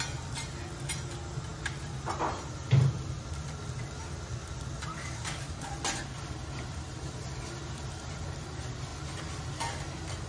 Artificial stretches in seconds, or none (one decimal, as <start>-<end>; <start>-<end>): 4.9-5.7

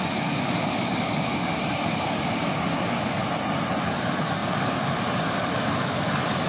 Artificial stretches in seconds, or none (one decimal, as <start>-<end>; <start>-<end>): 0.0-3.2; 3.8-6.5

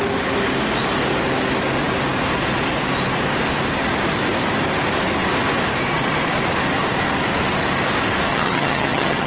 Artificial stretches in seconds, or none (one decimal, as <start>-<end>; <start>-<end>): 8.3-9.3

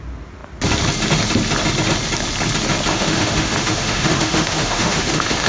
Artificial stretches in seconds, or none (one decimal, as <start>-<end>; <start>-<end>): 2.9-5.5

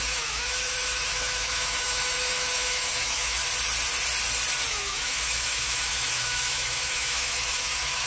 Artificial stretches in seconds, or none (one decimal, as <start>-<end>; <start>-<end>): 0.0-3.4; 4.7-8.1

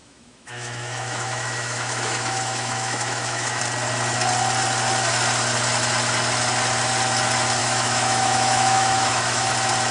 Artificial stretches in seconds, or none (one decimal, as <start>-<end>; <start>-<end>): 0.0-3.6; 7.6-9.5

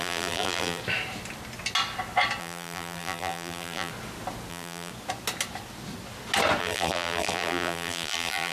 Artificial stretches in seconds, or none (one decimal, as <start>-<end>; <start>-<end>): 0.0-0.8; 2.4-3.9; 4.5-4.9; 6.6-8.5